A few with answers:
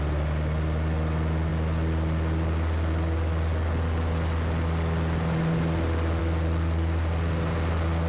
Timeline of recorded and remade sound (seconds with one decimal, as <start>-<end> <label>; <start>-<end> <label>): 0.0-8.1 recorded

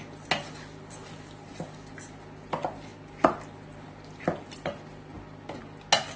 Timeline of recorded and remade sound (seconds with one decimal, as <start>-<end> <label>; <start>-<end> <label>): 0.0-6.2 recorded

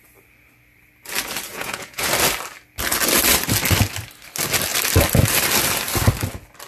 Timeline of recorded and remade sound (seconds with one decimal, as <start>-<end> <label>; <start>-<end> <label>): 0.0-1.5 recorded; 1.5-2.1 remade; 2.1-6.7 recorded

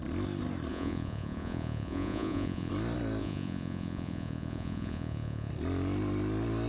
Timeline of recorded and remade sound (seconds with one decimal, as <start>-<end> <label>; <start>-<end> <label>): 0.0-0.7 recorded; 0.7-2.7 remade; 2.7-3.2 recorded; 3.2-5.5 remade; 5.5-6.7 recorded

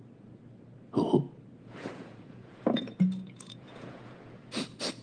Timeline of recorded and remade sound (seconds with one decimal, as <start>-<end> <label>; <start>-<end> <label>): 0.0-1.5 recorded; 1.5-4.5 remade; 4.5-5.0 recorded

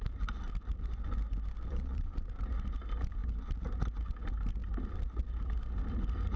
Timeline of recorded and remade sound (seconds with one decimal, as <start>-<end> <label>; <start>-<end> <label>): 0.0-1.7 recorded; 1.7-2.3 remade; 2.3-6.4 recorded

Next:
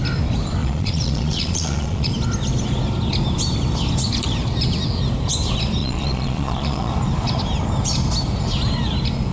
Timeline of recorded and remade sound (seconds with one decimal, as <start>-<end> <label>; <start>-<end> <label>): 0.0-0.6 recorded; 0.6-2.1 remade; 2.1-5.8 recorded; 5.8-6.9 remade; 6.9-9.3 recorded